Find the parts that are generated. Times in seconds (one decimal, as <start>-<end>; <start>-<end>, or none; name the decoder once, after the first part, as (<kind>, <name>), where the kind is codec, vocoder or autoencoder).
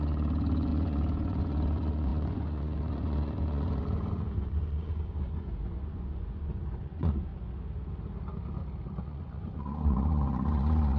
0.0-7.3 (vocoder, Vocos); 9.0-11.0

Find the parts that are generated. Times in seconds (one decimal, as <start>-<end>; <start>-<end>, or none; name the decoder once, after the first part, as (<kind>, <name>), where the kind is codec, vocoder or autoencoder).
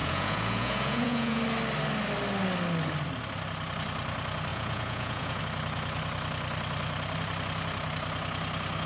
0.0-1.4 (vocoder, Vocos); 4.5-5.4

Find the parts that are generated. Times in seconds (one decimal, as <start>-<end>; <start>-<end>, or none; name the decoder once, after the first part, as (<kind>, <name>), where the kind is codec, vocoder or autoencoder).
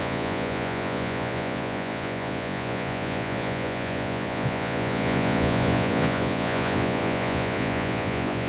0.0-8.5 (vocoder, Vocos)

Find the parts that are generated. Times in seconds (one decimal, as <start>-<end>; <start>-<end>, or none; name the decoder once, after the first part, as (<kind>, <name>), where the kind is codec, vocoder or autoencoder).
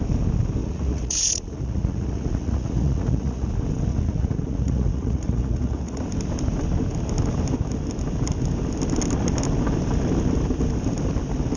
0.6-3.5 (vocoder, Vocos); 3.9-6.0